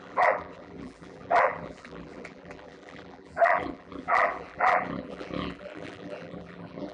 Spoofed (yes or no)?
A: yes